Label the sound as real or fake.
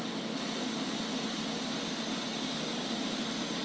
real